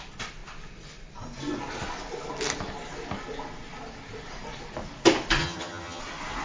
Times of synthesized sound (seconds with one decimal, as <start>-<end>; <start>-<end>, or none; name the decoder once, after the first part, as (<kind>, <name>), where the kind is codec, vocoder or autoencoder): 5.4-6.0 (vocoder, HiFi-GAN)